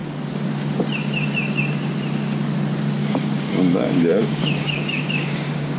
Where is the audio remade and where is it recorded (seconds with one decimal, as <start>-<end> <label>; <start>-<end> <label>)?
0.0-3.0 recorded; 3.0-5.8 remade